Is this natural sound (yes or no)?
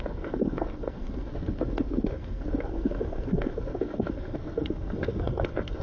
no